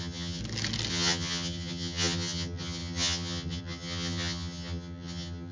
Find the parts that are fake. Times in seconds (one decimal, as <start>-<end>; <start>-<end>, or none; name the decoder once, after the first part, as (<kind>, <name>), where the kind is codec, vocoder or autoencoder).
0.0-0.4 (vocoder, HiFi-GAN); 0.9-5.5